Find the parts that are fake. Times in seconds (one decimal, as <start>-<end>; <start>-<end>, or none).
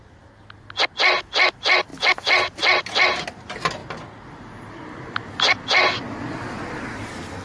none